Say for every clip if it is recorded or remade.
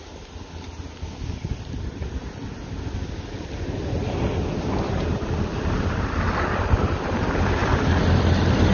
recorded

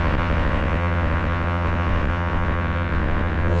remade